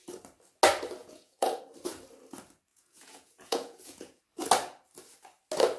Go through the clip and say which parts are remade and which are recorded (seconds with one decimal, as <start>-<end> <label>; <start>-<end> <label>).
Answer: 0.0-1.0 recorded; 1.0-1.6 remade; 1.6-2.7 recorded; 2.7-4.2 remade; 4.2-5.8 recorded